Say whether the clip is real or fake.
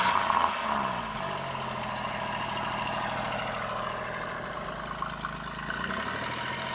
real